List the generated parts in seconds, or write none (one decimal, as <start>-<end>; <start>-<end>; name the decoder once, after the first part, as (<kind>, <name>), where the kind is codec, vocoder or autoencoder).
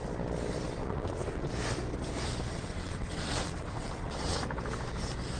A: 0.8-1.5 (vocoder, WaveNeXt); 2.5-4.4